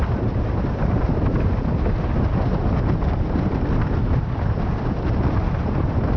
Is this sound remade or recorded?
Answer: recorded